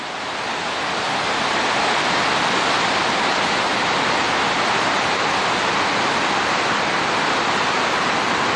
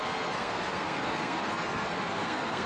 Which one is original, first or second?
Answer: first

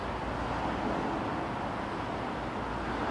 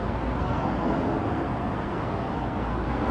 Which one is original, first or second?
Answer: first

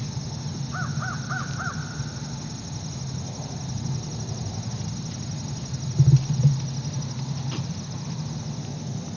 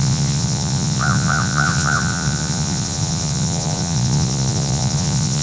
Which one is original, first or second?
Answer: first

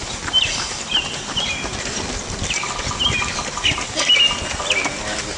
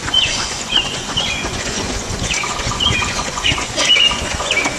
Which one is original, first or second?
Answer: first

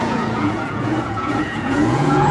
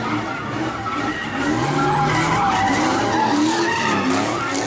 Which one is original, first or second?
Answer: second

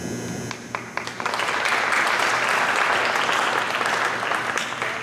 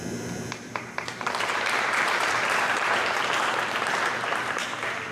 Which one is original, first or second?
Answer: first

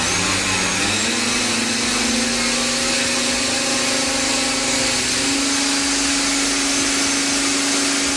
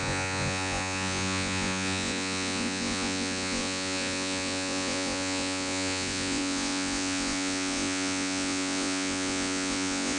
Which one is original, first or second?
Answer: first